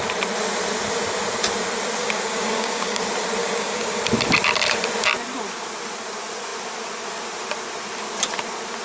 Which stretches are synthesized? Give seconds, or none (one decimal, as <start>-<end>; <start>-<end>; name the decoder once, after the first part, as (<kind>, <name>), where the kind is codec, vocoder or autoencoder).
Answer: 2.0-3.0 (codec, DAC); 3.4-4.0